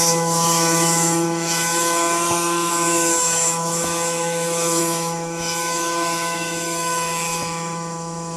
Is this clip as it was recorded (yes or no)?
no